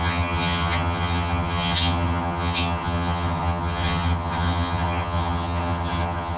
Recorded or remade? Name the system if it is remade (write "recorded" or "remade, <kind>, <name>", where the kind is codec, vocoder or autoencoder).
remade, vocoder, HiFi-GAN